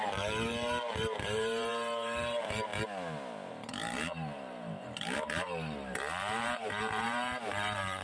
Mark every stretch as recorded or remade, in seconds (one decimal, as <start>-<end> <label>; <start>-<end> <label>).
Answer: 0.0-2.7 remade; 2.7-3.5 recorded; 3.5-8.0 remade